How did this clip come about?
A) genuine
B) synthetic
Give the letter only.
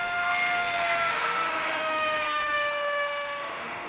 B